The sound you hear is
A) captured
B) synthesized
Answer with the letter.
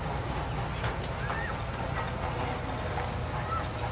A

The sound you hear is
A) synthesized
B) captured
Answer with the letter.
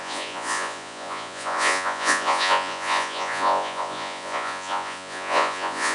A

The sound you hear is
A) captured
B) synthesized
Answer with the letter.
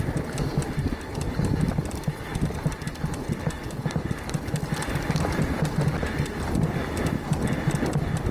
A